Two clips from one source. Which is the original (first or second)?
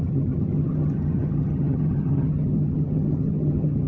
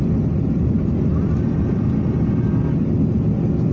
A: second